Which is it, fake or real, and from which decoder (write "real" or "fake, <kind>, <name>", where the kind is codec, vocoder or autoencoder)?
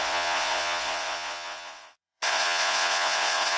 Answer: fake, vocoder, Vocos